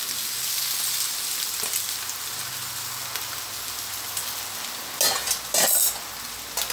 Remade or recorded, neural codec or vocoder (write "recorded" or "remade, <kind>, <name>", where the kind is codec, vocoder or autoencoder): recorded